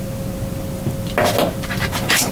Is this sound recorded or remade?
recorded